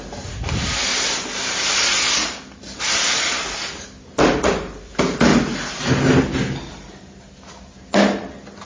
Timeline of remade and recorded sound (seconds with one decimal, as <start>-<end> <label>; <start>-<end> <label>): 0.0-8.7 recorded